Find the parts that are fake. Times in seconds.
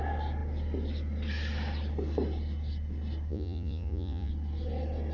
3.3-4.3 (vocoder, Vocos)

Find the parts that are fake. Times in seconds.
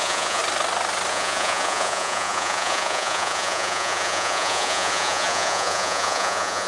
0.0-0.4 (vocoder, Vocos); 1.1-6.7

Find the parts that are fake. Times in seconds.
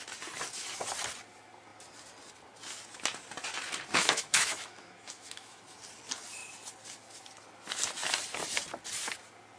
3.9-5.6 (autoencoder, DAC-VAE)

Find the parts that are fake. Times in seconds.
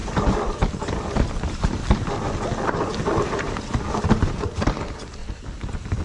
0.0-3.6 (vocoder, BigVGAN v2); 5.2-6.0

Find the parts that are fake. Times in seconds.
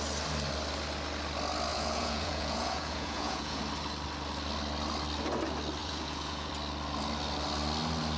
1.7-3.6 (vocoder, Vocos); 5.8-6.5